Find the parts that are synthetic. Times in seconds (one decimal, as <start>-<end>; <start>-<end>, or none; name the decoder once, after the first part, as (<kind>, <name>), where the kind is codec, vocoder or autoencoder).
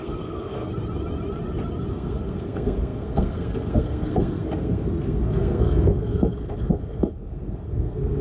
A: 0.0-0.7 (codec, SNAC); 1.9-8.2